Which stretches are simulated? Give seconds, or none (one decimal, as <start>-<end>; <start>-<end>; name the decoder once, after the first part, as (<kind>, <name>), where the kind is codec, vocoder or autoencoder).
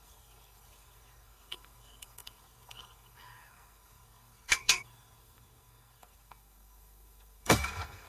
0.0-8.1 (codec, SNAC)